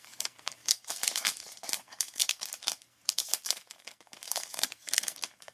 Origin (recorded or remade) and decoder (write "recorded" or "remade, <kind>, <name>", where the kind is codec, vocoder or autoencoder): remade, codec, SNAC